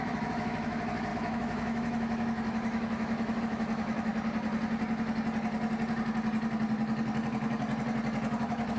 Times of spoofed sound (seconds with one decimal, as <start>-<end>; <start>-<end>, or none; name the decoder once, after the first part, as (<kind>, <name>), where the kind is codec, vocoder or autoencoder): 0.0-4.1 (autoencoder, DAC-VAE); 8.4-8.8